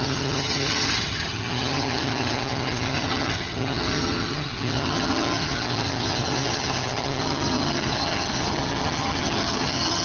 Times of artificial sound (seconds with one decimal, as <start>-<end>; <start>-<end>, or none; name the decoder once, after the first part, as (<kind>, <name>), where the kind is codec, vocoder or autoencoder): 0.0-10.0 (vocoder, HiFi-GAN)